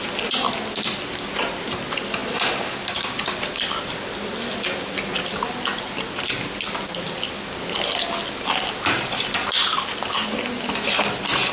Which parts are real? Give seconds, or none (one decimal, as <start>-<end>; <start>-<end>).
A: 0.0-11.5